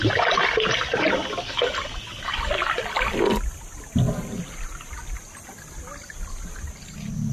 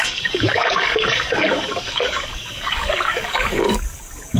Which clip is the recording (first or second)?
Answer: first